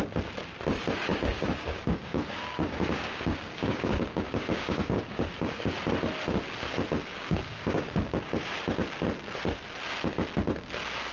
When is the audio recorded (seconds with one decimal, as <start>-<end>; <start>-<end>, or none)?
0.0-1.1; 5.8-7.1; 8.2-11.1